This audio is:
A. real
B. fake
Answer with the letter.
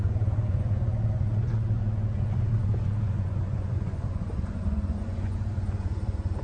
B